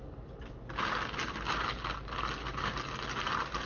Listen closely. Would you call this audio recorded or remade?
recorded